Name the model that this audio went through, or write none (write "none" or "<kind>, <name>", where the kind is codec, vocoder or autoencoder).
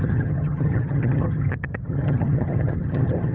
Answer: vocoder, HiFi-GAN